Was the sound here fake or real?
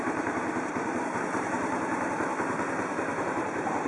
fake